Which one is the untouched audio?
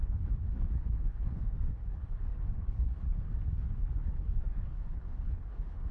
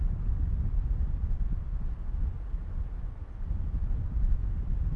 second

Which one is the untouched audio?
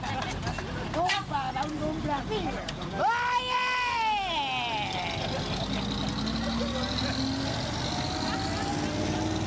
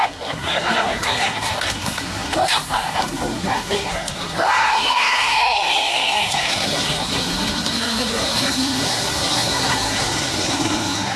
first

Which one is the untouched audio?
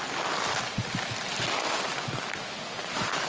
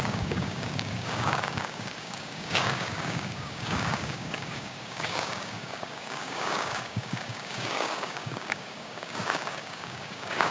first